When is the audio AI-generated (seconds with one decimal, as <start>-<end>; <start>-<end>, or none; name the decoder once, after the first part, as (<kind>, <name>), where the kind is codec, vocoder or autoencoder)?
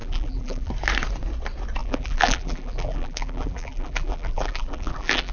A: 0.0-0.7 (vocoder, BigVGAN v2); 1.8-5.3